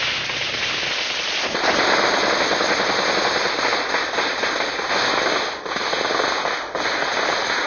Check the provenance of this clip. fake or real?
real